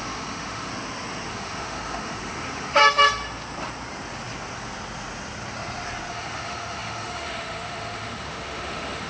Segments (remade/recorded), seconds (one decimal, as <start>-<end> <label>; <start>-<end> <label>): 0.0-0.7 remade; 0.7-1.3 recorded; 1.3-2.8 remade; 2.8-6.1 recorded; 6.1-9.1 remade